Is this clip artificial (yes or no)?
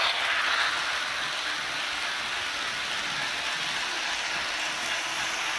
no